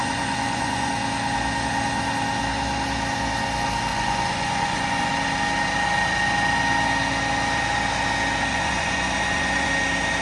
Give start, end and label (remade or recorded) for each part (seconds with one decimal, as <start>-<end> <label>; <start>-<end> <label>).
0.0-0.9 remade; 0.9-3.9 recorded; 3.9-5.1 remade; 5.1-8.5 recorded; 8.5-9.7 remade; 9.7-10.2 recorded